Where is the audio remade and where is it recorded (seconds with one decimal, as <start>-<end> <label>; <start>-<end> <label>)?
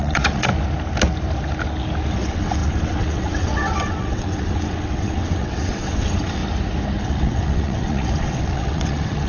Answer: 0.0-0.5 remade; 0.5-2.1 recorded; 2.1-6.4 remade; 6.4-7.0 recorded; 7.0-9.3 remade